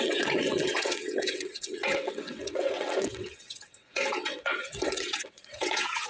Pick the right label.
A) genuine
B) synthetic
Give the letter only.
B